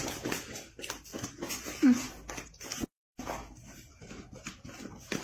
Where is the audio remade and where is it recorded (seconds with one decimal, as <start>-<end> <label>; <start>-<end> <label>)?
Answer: 0.0-5.2 recorded